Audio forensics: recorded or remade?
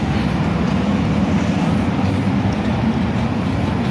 recorded